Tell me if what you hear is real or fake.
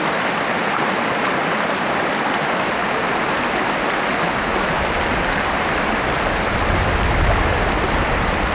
real